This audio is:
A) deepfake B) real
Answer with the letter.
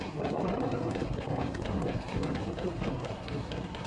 A